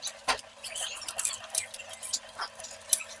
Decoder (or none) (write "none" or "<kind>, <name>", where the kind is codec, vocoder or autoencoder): none